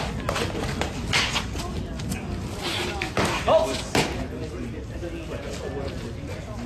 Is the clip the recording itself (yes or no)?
yes